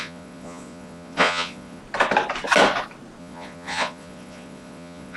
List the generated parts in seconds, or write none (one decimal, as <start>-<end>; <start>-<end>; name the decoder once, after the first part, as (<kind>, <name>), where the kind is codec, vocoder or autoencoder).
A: 0.0-1.8 (vocoder, Vocos); 3.2-5.2